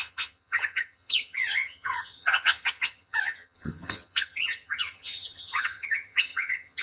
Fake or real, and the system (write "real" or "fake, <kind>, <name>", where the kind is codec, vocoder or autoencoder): fake, vocoder, HiFi-GAN